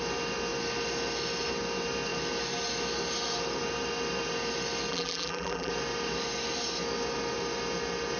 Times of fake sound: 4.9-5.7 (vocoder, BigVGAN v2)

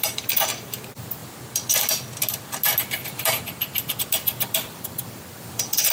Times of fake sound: 0.0-1.2 (vocoder, BigVGAN v2); 4.0-5.9